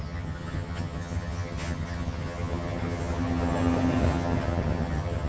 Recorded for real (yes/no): no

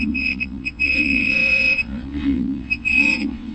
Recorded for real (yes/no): no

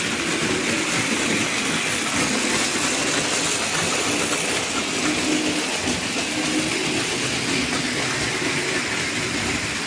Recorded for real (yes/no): yes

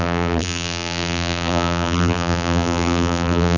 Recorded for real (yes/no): no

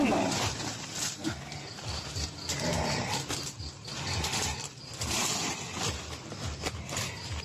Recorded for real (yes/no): yes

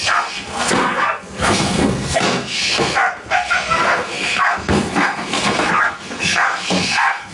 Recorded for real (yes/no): no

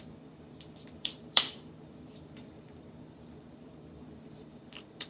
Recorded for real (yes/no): no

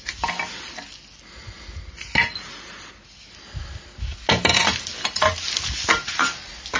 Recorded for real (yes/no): yes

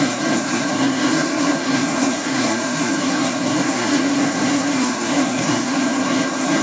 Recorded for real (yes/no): no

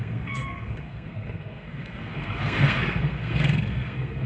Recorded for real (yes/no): no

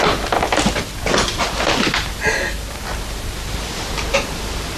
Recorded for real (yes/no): yes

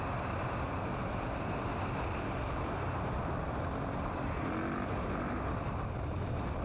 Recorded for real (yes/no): yes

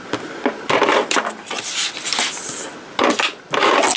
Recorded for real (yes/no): yes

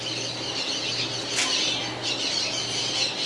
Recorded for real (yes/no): yes